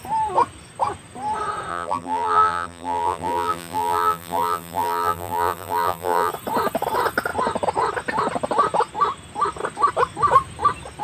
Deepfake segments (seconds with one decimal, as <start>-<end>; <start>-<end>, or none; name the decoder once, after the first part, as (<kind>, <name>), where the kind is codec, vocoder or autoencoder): 1.7-6.3 (vocoder, BigVGAN v2)